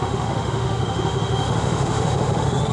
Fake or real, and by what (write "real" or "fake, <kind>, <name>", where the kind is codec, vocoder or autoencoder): fake, autoencoder, DAC-VAE